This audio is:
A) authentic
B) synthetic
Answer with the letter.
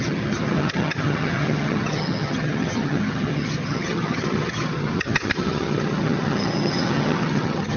B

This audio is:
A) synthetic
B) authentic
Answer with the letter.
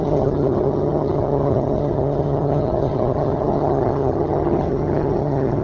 A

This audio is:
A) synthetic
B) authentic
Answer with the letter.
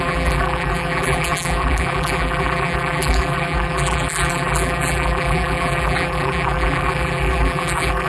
A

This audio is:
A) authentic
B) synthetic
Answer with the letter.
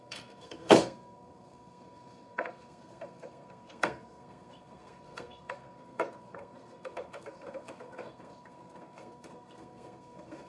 B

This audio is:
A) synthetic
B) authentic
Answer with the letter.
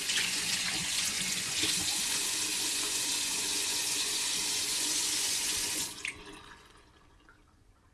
A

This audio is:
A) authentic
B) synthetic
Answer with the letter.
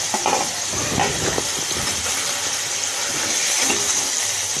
A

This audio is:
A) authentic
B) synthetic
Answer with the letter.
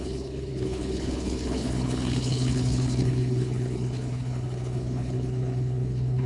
B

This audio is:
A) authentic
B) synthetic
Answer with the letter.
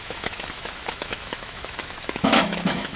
B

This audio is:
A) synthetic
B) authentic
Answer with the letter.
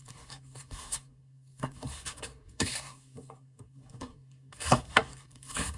A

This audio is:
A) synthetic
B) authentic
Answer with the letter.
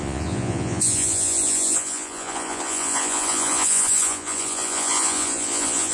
A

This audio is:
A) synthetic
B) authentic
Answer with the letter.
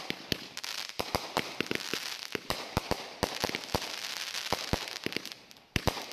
B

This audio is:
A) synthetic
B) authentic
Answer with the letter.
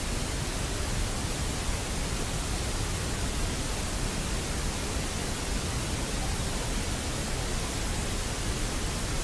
B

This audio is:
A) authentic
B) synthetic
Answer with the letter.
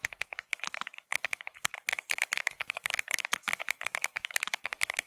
B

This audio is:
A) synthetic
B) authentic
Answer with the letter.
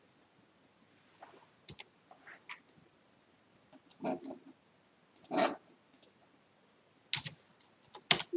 B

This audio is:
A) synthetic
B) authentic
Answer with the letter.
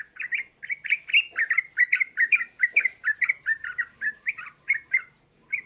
A